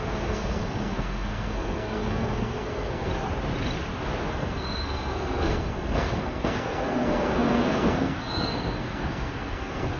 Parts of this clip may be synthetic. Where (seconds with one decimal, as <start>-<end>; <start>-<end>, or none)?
0.0-3.1; 4.3-10.0